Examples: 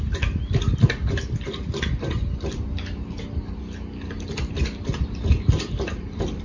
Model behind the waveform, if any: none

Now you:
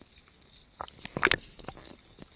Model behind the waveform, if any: none